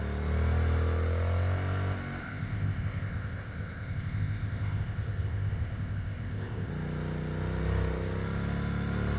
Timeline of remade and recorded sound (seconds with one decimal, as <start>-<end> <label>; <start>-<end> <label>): 0.0-2.2 recorded; 2.2-6.7 remade; 6.7-9.2 recorded